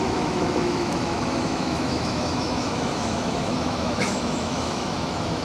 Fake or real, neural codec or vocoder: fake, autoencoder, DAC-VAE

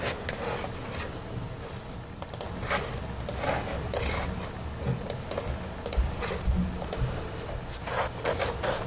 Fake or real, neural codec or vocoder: real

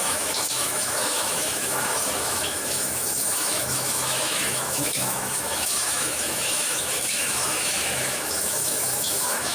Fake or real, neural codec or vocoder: fake, autoencoder, DAC-VAE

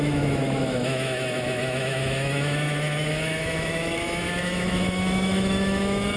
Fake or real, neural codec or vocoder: fake, autoencoder, DAC-VAE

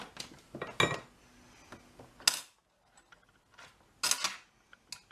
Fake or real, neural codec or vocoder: real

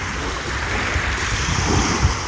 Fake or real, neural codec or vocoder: real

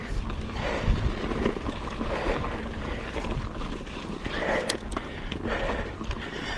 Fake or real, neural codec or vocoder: real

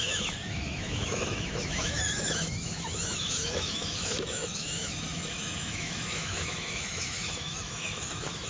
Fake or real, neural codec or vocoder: fake, autoencoder, DAC-VAE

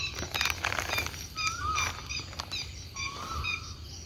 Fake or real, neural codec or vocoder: real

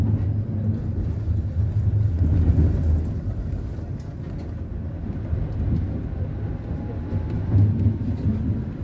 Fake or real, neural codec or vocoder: real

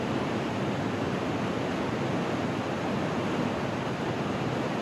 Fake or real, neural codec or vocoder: real